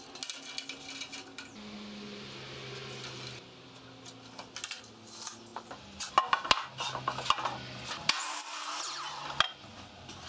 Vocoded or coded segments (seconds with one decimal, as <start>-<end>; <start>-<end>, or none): none